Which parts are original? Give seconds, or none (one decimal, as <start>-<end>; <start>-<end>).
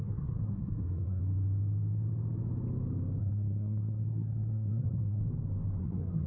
1.2-3.2; 5.2-5.8